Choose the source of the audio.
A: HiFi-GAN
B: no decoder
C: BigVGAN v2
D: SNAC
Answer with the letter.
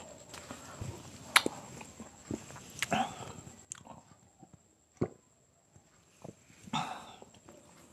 B